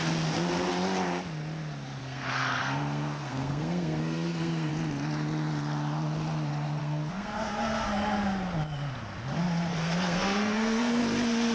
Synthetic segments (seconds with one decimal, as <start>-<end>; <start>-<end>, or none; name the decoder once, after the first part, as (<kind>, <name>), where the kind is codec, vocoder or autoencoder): 2.0-4.7 (codec, SNAC); 6.8-7.9; 9.7-11.0